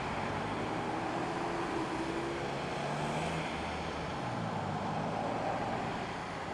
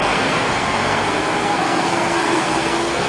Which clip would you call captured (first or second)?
first